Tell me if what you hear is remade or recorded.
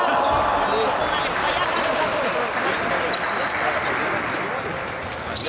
recorded